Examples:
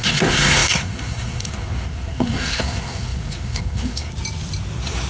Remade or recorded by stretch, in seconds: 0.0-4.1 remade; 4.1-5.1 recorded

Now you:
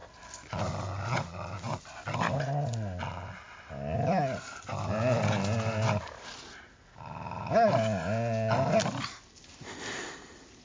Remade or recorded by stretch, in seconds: 0.0-10.6 recorded

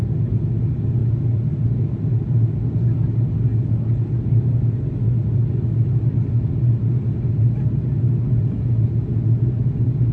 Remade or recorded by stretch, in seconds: 0.0-10.1 recorded

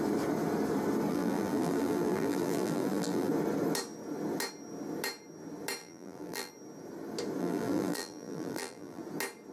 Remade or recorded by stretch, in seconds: 0.0-1.1 recorded; 1.1-3.3 remade; 3.3-5.8 recorded; 5.8-6.5 remade; 6.5-7.4 recorded; 7.4-9.0 remade; 9.0-9.5 recorded

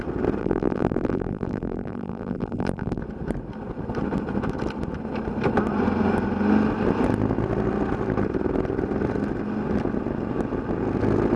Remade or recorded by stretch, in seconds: 0.0-0.4 recorded; 0.4-3.0 remade; 3.0-11.4 recorded

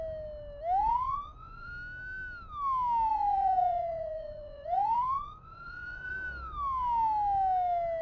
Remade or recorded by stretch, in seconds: 0.0-0.8 recorded; 0.8-1.7 remade; 1.7-3.1 recorded; 3.1-6.1 remade; 6.1-8.0 recorded

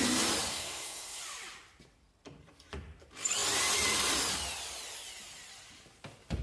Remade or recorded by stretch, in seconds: 0.0-0.5 recorded; 0.5-1.2 remade; 1.2-6.4 recorded